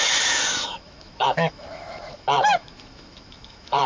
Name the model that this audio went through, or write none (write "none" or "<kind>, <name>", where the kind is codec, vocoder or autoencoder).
autoencoder, DAC-VAE